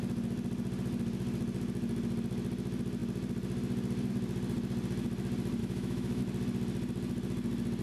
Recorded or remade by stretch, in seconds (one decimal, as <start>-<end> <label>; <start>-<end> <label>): 0.0-5.6 recorded; 5.6-6.2 remade; 6.2-7.8 recorded